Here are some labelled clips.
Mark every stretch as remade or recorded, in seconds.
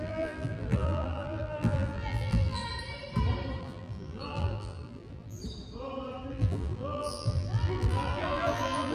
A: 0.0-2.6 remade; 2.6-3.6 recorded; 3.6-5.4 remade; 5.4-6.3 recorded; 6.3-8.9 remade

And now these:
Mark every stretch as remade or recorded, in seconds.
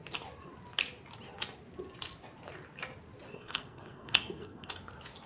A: 0.0-3.3 recorded; 3.3-4.7 remade; 4.7-5.3 recorded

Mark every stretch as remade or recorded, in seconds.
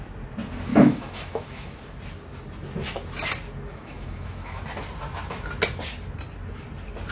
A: 0.0-0.7 recorded; 0.7-1.8 remade; 1.8-3.7 recorded; 3.7-4.6 remade; 4.6-7.1 recorded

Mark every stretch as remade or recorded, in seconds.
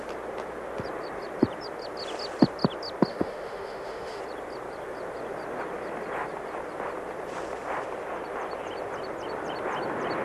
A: 0.0-3.1 recorded; 3.1-4.2 remade; 4.2-10.2 recorded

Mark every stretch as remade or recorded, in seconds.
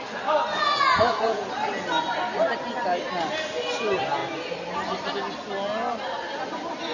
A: 0.0-0.5 recorded; 0.5-1.5 remade; 1.5-6.9 recorded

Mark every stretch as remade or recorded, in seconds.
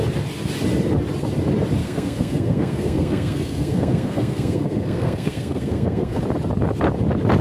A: 0.0-1.8 recorded; 1.8-6.2 remade; 6.2-7.4 recorded